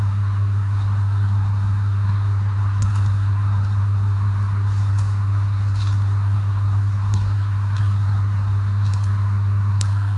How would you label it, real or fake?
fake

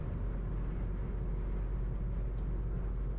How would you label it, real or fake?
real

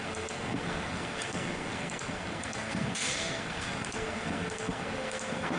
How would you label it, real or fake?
fake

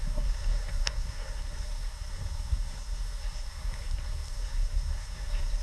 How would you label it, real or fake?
fake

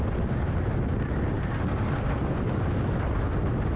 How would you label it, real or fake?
real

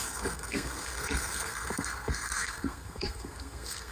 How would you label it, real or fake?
fake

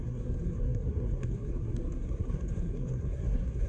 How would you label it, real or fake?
fake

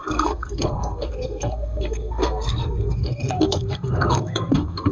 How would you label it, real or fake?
fake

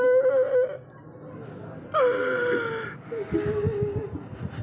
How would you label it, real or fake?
real